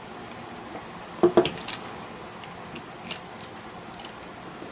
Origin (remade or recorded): recorded